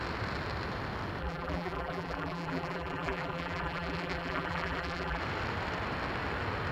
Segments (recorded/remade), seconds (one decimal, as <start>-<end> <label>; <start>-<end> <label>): 0.0-1.2 recorded; 1.2-5.2 remade; 5.2-6.7 recorded